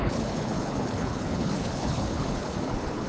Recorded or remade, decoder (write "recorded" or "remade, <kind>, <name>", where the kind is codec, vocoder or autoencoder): remade, codec, HILCodec